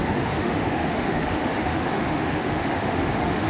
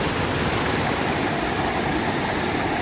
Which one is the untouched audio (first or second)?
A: second